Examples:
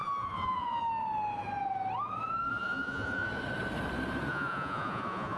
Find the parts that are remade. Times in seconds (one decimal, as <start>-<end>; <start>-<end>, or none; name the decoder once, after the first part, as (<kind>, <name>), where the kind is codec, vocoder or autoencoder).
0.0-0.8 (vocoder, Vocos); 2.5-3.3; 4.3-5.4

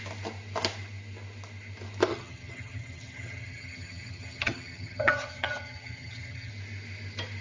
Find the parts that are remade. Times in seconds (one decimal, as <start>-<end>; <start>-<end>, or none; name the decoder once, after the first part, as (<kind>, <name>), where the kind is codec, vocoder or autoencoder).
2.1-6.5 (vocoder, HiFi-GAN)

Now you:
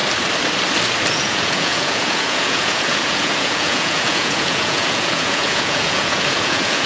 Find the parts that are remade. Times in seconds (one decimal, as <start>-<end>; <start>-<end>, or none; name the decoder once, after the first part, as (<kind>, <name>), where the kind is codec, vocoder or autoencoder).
1.1-6.9 (vocoder, Vocos)

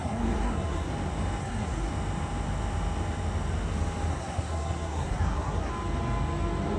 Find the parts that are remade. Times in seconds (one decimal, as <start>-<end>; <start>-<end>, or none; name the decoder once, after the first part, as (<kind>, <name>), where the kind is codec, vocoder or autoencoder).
0.0-0.9 (codec, SNAC); 1.4-1.9; 4.1-5.7

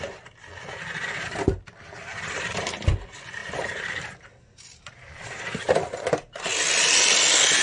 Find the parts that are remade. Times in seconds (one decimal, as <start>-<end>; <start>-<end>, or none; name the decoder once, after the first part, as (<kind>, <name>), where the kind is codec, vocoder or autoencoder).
2.1-2.8 (vocoder, BigVGAN v2); 3.4-5.4

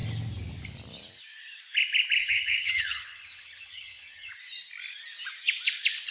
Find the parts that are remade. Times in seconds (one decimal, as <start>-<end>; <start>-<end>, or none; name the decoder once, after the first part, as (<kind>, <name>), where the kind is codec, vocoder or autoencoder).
2.2-4.3 (vocoder, HiFi-GAN)

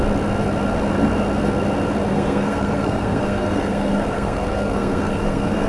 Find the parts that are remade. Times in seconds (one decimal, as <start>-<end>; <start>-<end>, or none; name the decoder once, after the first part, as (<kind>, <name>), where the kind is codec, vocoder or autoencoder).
2.1-5.7 (codec, SNAC)

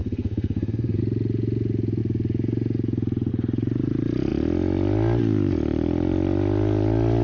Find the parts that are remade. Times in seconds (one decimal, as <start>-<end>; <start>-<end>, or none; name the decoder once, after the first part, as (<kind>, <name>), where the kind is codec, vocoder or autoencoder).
0.0-1.0 (codec, SNAC)